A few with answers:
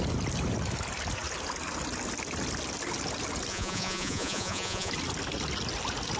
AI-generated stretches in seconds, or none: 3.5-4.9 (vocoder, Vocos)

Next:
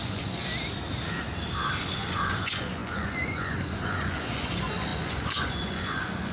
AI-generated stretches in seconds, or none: 0.0-0.4 (vocoder, Vocos); 1.9-6.3